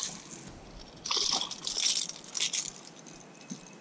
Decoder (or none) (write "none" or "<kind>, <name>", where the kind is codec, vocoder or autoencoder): none